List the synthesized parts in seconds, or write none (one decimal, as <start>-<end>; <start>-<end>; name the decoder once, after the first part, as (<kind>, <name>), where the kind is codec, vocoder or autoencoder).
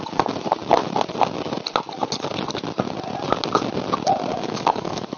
4.3-5.2 (codec, DAC)